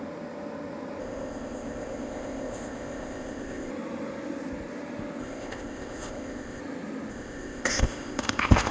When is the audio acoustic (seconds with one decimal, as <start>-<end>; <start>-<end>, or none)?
0.0-1.0; 3.7-5.2; 6.6-7.1